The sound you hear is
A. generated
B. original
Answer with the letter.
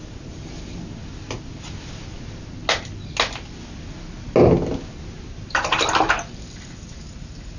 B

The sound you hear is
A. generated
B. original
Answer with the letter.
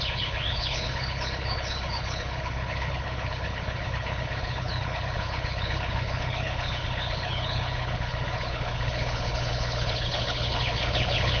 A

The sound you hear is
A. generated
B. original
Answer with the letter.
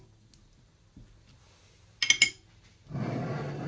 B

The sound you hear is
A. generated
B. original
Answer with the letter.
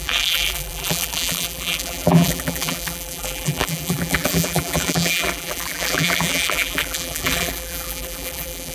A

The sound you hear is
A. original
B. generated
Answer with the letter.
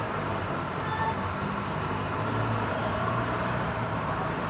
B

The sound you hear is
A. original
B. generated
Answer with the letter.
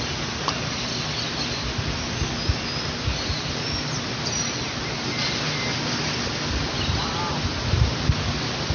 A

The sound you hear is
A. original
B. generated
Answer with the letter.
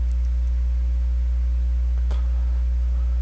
A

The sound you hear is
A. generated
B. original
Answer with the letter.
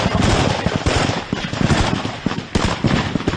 A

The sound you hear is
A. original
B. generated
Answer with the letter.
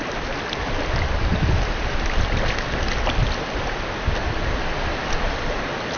A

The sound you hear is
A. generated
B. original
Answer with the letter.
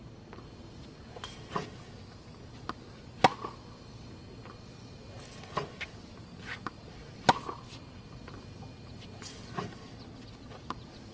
B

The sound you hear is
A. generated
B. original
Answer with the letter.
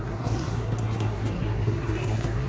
A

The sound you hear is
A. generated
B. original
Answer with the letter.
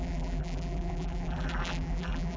A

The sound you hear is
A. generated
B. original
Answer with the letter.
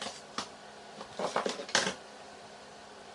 B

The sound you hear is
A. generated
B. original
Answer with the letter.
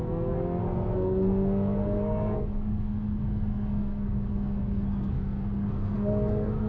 A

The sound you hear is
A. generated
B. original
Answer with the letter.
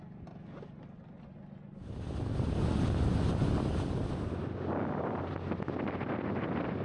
B